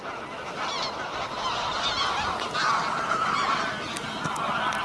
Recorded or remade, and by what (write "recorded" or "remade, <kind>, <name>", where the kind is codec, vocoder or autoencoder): recorded